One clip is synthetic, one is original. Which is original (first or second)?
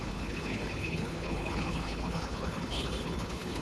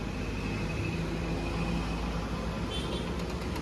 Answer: second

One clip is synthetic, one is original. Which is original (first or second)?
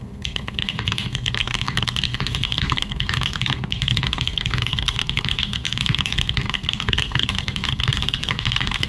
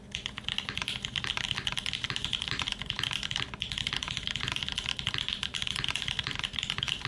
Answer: second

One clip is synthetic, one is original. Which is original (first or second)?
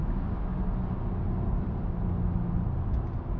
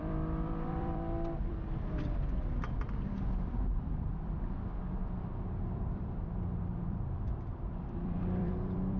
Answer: first